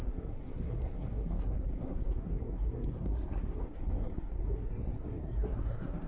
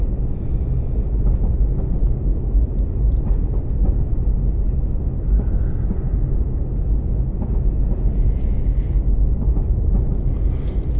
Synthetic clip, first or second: first